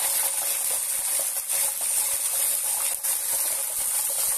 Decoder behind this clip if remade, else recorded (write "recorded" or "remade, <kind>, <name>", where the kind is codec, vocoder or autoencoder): recorded